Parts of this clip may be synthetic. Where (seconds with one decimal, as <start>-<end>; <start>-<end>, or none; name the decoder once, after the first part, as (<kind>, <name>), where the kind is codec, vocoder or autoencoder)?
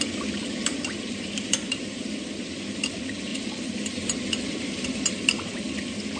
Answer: 0.6-2.2 (vocoder, BigVGAN v2); 3.3-5.0